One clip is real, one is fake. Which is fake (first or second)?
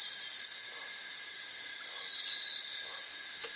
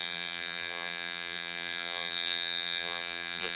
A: second